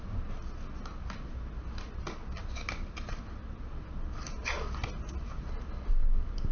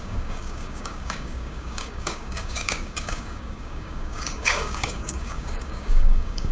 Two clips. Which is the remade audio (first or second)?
second